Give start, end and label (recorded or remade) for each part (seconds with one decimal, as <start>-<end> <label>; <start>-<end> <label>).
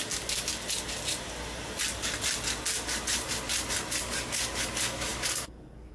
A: 0.0-0.5 remade; 0.5-4.0 recorded; 4.0-5.9 remade